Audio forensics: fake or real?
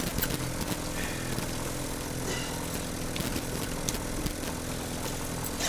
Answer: real